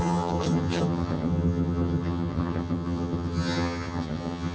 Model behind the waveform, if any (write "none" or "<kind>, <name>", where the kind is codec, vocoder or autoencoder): vocoder, HiFi-GAN